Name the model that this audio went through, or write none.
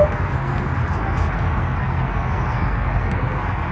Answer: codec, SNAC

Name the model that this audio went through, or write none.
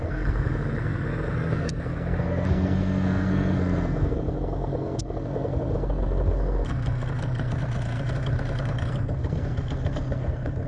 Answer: codec, SNAC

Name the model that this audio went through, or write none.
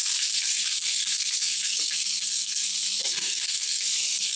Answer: codec, SNAC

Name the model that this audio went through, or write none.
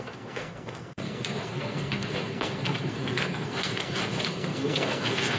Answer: codec, SNAC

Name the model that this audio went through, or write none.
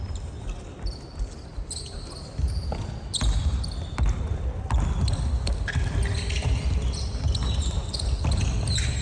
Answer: none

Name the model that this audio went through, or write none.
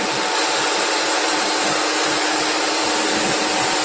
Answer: none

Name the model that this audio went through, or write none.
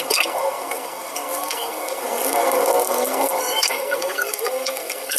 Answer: codec, SNAC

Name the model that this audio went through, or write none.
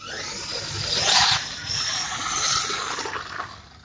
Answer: none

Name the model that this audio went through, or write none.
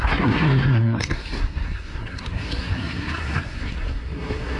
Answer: codec, SNAC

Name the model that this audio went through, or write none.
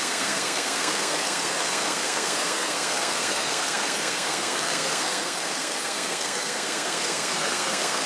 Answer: codec, SNAC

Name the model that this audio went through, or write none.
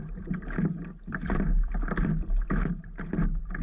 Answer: none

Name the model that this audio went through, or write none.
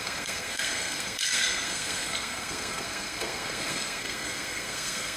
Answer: codec, SNAC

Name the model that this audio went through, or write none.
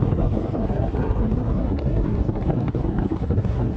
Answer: codec, SNAC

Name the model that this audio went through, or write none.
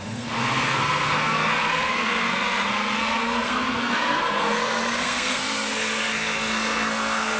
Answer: codec, SNAC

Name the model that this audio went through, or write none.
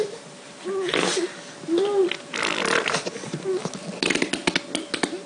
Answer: none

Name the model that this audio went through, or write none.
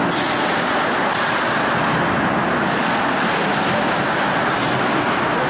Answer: none